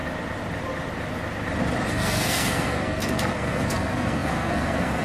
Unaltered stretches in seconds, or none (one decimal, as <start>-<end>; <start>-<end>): 0.0-1.9